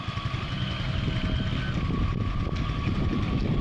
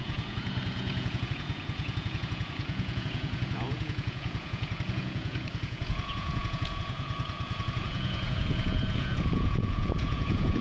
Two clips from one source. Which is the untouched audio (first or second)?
first